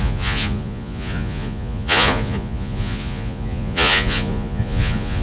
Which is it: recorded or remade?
remade